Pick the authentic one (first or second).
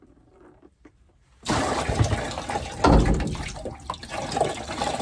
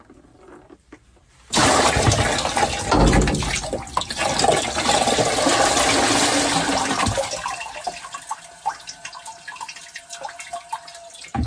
second